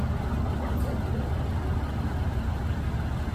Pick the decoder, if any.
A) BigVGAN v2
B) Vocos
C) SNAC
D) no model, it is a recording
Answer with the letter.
D